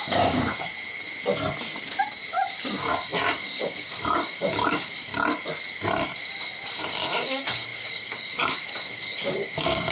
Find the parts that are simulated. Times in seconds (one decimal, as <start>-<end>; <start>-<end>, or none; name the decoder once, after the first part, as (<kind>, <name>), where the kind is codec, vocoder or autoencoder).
0.0-0.5 (codec, DAC); 2.6-5.1; 6.7-9.9